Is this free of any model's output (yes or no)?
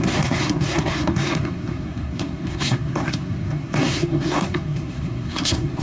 no